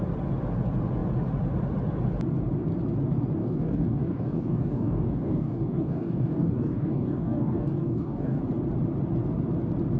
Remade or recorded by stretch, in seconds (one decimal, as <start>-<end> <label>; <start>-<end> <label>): 0.0-3.4 recorded; 3.4-8.4 remade; 8.4-10.0 recorded